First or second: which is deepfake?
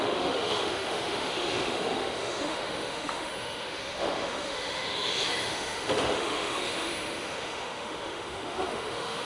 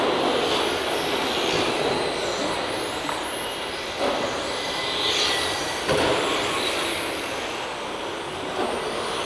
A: first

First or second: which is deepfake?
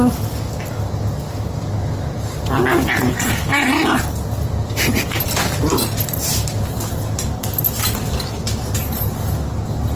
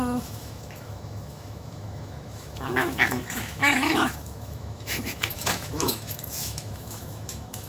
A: second